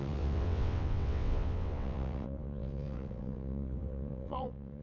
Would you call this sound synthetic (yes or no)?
yes